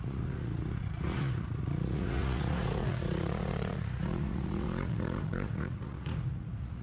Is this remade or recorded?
remade